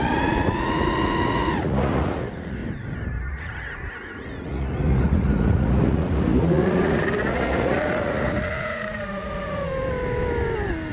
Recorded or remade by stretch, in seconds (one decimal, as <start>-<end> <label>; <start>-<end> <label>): 0.0-2.6 remade; 2.6-3.3 recorded; 3.3-9.7 remade; 9.7-10.9 recorded